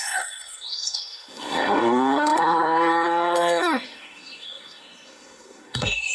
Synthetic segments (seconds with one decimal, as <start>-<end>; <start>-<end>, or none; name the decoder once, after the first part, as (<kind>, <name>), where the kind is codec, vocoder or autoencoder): 0.0-6.1 (codec, SNAC)